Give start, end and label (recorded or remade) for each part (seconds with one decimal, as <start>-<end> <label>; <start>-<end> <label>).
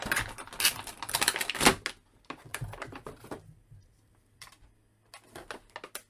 0.0-2.5 recorded; 2.5-4.5 remade; 4.5-6.1 recorded